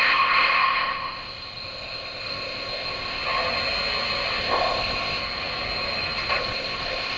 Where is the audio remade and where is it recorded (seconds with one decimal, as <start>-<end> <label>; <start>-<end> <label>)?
0.0-3.2 remade; 3.2-4.4 recorded; 4.4-5.2 remade; 5.2-6.4 recorded; 6.4-7.2 remade